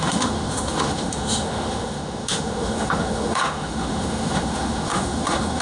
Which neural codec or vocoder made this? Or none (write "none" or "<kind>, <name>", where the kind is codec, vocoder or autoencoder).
autoencoder, DAC-VAE